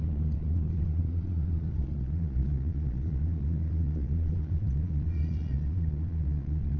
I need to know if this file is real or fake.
fake